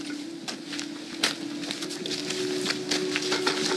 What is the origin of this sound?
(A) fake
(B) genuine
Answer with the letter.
B